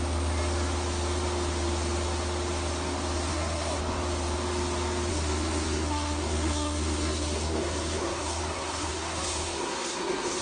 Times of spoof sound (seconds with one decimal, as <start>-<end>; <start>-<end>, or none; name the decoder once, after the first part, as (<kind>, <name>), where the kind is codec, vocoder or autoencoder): 3.3-3.8 (codec, SNAC); 5.1-10.4

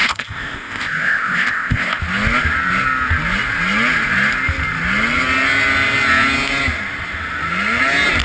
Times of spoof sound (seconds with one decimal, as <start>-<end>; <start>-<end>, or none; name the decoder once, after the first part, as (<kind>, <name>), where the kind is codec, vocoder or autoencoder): 0.0-2.0 (codec, ZipCodec)

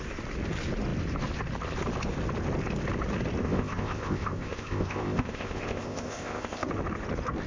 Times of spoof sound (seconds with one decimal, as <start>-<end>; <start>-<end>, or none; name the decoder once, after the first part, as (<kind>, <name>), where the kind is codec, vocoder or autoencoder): 3.4-6.7 (codec, ZipCodec)

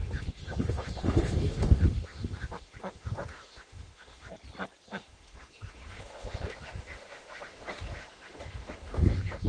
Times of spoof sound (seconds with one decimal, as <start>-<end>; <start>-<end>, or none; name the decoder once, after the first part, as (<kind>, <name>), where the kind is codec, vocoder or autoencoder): 0.0-4.3 (autoencoder, DAC-VAE); 4.9-9.5

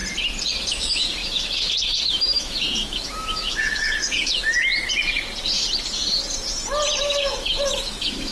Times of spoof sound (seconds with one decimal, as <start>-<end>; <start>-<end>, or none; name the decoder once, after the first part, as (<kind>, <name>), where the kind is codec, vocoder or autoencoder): 0.7-4.7 (autoencoder, DAC-VAE); 7.0-8.3

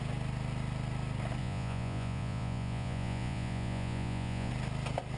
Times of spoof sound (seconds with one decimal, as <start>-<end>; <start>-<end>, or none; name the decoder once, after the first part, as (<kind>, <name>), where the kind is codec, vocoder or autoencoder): 1.4-4.5 (vocoder, Vocos)

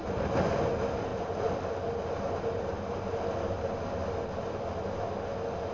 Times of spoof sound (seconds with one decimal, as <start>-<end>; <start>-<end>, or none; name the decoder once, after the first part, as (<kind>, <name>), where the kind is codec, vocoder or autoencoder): none

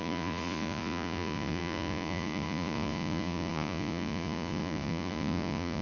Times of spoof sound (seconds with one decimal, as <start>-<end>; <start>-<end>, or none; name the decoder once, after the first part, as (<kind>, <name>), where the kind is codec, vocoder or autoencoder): 0.0-5.8 (vocoder, Vocos)